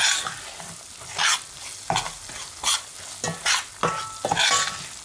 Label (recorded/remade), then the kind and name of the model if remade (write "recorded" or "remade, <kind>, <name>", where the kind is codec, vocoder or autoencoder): recorded